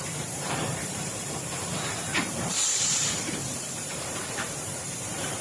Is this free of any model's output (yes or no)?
no